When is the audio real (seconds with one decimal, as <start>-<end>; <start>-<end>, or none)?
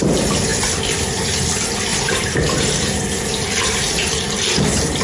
0.0-1.9; 4.2-5.0